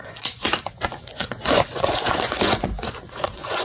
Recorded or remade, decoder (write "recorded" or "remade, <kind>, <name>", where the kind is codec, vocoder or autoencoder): remade, vocoder, Vocos